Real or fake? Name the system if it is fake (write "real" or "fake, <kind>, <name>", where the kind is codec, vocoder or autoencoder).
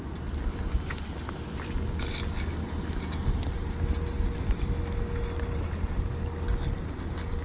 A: real